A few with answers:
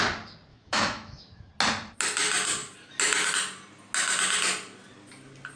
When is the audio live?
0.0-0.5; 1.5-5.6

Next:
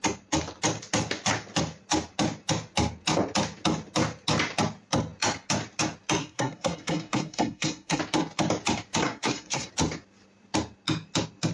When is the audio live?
0.0-6.2; 8.0-9.0; 9.7-11.5

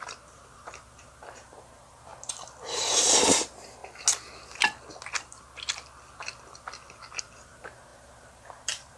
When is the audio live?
2.1-3.4; 3.8-7.2

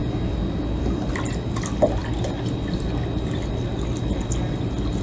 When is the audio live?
0.0-5.0